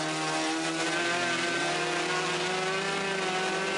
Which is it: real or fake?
real